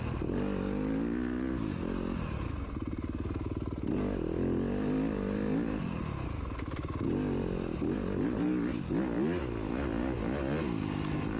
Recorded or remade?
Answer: recorded